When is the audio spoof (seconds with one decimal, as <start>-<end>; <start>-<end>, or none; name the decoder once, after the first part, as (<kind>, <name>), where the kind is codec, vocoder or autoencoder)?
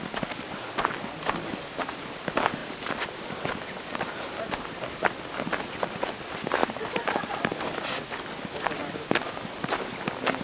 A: none